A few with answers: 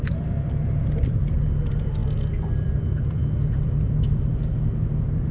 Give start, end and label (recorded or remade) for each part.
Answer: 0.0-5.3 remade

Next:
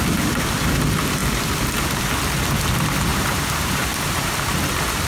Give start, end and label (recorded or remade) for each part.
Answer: 0.0-3.1 recorded; 3.1-4.3 remade; 4.3-5.1 recorded

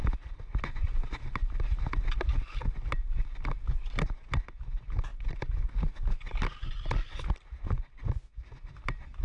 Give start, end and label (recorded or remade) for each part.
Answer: 0.0-9.2 recorded

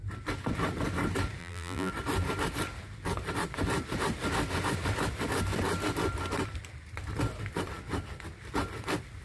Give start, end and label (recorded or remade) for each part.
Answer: 0.0-1.4 recorded; 1.4-1.9 remade; 1.9-9.2 recorded

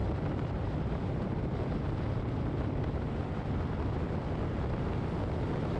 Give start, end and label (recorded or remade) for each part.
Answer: 0.0-3.5 remade; 3.5-5.8 recorded

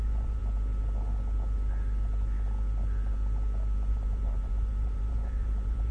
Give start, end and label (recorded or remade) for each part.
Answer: 0.0-0.4 remade; 0.4-3.9 recorded; 3.9-5.9 remade

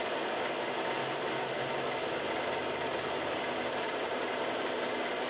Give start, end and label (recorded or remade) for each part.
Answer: 0.0-1.0 recorded; 1.0-1.7 remade; 1.7-2.9 recorded; 2.9-4.4 remade; 4.4-5.3 recorded

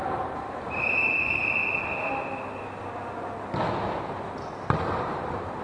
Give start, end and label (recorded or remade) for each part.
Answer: 0.0-1.6 remade; 1.6-5.0 recorded; 5.0-5.6 remade